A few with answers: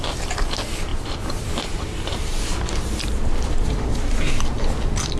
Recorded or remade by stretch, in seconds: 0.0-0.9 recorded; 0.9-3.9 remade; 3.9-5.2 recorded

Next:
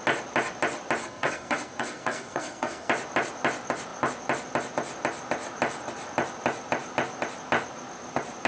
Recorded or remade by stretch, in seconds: 0.0-1.0 recorded; 1.0-2.9 remade; 2.9-8.5 recorded

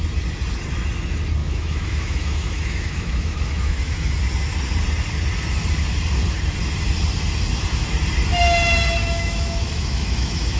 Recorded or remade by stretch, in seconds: 0.0-1.4 recorded; 1.4-4.2 remade; 4.2-9.0 recorded; 9.0-10.6 remade

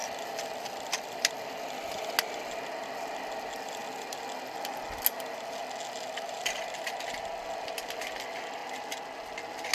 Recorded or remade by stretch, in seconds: 0.0-2.1 remade; 2.1-9.7 recorded

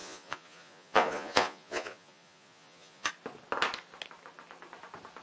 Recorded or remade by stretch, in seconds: 0.0-3.1 remade; 3.1-5.2 recorded

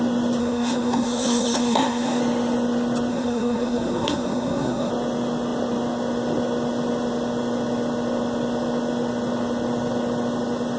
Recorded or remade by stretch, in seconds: 0.0-0.4 recorded; 0.4-2.2 remade; 2.2-3.1 recorded; 3.1-4.9 remade; 4.9-10.8 recorded